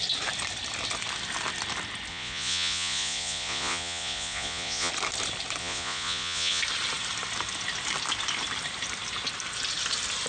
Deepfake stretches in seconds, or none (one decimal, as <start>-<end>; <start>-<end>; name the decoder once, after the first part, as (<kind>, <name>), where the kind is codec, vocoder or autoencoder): 2.1-4.9 (vocoder, Vocos); 5.6-6.6